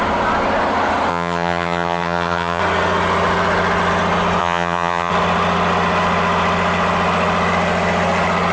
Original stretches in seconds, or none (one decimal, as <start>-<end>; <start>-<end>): 0.0-1.1; 2.6-4.4; 5.1-8.5